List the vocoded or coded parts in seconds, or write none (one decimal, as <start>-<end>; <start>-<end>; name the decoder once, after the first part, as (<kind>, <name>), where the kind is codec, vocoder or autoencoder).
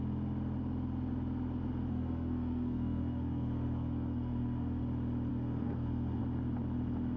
1.9-4.8 (codec, SNAC); 5.3-6.2